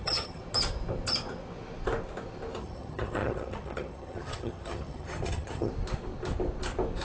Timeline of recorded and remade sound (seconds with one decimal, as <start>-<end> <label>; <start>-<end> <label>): 0.0-0.4 remade; 0.4-2.6 recorded; 2.6-5.7 remade; 5.7-7.0 recorded